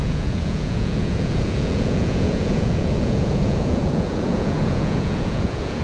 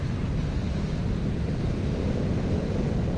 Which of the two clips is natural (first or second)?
second